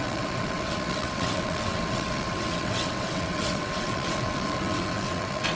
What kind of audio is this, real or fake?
fake